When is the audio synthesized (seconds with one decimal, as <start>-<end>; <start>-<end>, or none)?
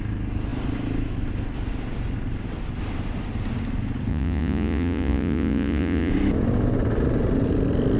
4.1-6.1